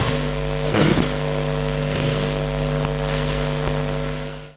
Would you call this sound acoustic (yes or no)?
no